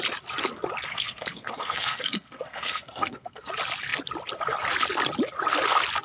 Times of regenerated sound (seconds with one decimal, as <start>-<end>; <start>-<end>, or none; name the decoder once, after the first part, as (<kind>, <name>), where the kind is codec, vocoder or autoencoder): 0.9-3.5 (codec, SNAC)